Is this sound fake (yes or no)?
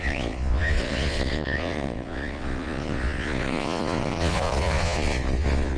yes